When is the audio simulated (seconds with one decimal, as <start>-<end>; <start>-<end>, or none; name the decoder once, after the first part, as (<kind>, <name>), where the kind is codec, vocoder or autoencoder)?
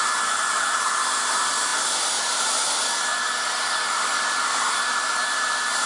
none